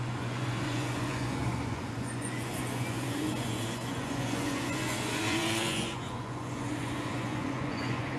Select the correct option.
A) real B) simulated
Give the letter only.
B